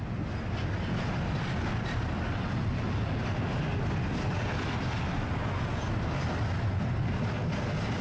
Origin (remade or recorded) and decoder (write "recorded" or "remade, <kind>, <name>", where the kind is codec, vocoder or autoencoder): recorded